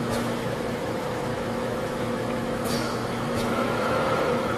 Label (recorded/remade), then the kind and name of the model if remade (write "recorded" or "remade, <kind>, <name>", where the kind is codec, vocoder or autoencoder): remade, autoencoder, DAC-VAE